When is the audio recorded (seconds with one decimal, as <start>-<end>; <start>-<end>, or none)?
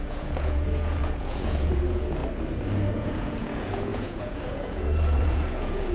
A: 2.2-2.9